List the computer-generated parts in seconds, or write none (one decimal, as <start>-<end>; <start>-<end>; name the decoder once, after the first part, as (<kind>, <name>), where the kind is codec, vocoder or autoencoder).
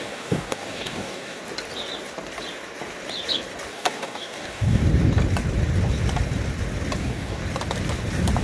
0.0-1.4 (codec, DAC); 3.7-4.8; 7.0-7.4